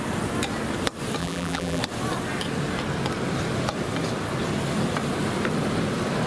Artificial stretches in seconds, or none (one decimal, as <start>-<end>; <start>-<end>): 1.2-1.8